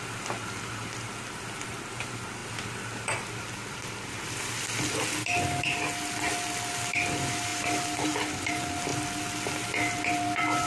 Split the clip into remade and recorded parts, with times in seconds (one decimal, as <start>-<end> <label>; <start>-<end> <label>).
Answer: 0.0-0.8 recorded; 0.8-2.0 remade; 2.0-7.5 recorded; 7.5-8.5 remade; 8.5-10.7 recorded